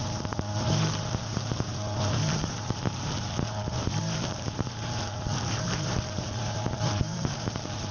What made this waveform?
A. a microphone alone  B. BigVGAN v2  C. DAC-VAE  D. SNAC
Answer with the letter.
B